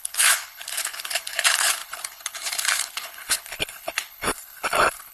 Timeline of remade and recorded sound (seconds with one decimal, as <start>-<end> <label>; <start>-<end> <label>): 0.0-5.1 remade